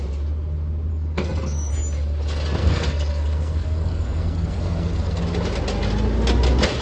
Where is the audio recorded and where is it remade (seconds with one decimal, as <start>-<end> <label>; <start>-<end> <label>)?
0.0-0.9 recorded; 0.9-1.7 remade; 1.7-2.6 recorded; 2.6-5.2 remade; 5.2-6.8 recorded